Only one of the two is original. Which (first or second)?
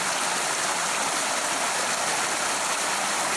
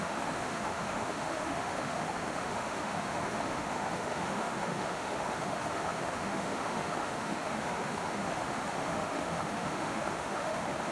first